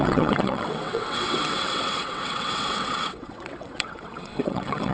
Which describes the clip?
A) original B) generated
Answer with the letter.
B